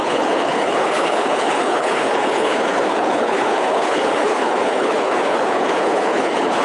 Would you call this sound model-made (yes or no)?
yes